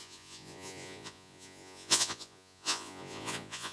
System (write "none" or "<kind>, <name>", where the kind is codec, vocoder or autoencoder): vocoder, Vocos